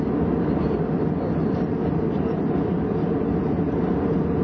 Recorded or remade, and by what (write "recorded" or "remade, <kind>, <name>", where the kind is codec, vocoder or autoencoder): recorded